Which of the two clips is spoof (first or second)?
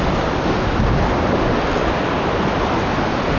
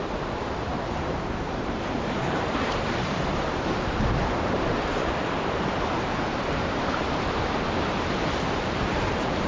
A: second